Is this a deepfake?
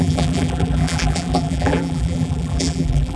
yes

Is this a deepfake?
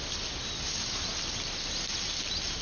no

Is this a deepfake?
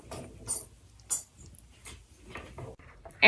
no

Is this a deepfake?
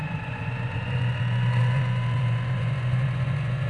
yes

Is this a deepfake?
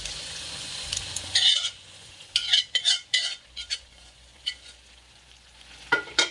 yes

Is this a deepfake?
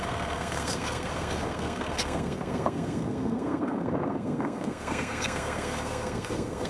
yes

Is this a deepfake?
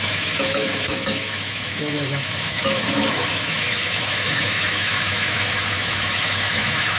yes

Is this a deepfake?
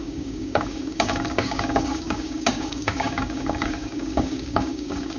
yes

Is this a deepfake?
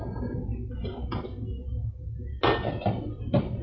no